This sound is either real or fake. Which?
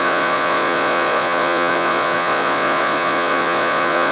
fake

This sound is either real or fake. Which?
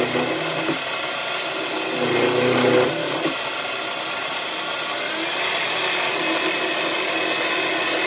real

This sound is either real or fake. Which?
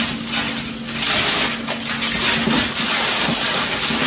real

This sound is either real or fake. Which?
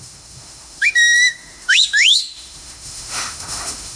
fake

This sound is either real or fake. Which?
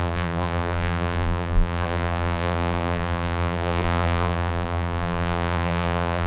fake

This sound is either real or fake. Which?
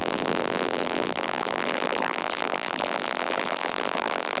fake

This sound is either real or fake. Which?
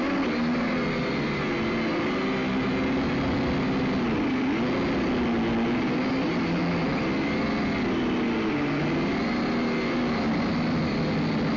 real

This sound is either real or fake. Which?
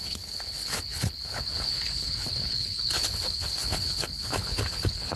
fake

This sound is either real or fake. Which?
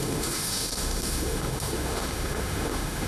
fake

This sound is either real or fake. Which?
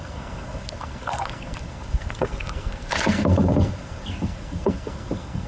fake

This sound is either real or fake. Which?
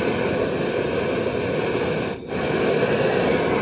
real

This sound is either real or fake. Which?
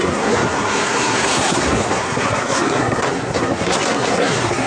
fake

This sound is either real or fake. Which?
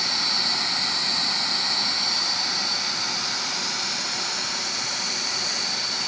real